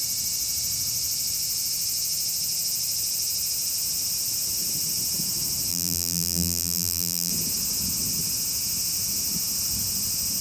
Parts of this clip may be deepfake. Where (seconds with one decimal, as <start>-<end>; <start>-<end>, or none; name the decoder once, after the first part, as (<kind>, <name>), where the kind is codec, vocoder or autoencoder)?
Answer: 5.7-7.3 (vocoder, BigVGAN v2)